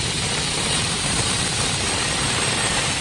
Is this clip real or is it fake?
fake